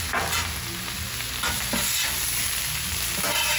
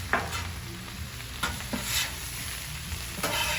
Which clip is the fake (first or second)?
second